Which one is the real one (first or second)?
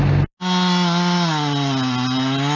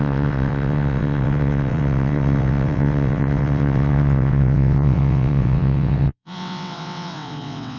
first